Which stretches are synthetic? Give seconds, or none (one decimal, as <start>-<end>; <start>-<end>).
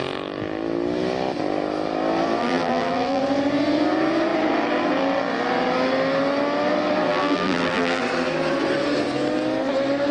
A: 2.4-3.2; 7.1-8.0